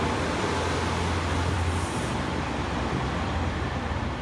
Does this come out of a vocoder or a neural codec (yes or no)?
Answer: yes